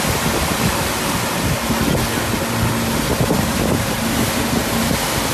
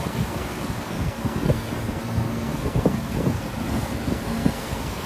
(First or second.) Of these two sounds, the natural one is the first